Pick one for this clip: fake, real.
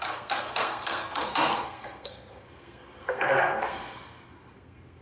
fake